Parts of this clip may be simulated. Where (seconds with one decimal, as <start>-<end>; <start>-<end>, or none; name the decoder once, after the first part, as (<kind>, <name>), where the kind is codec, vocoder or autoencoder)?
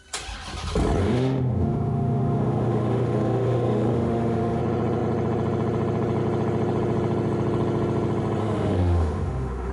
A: 1.0-4.6 (autoencoder, DAC-VAE); 8.4-9.7